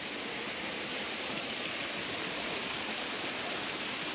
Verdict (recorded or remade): recorded